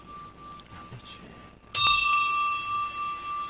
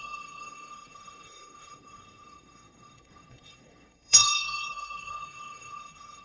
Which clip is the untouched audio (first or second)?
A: first